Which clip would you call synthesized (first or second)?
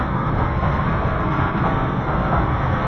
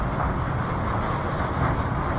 first